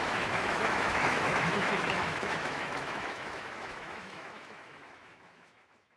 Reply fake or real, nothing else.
fake